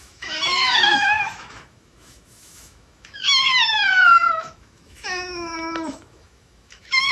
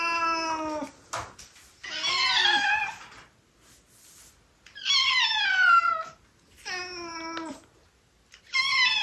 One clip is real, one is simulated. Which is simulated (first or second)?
first